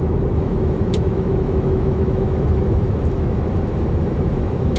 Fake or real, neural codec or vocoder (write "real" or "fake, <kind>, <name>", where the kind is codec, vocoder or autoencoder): fake, autoencoder, DAC-VAE